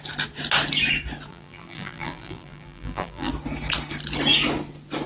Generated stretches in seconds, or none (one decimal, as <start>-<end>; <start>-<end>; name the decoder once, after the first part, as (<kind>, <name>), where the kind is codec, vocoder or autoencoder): 1.3-3.3 (vocoder, BigVGAN v2)

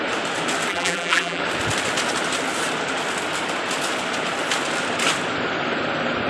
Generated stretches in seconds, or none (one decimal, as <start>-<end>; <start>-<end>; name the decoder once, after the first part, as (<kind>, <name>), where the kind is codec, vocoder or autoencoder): 0.7-1.4 (vocoder, BigVGAN v2)